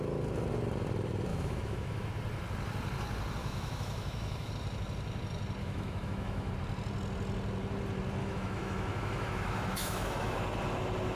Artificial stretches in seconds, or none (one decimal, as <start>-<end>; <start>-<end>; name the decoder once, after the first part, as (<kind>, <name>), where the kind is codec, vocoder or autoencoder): 1.3-2.1 (autoencoder, DAC-VAE); 3.4-4.5; 5.6-6.5; 8.2-10.4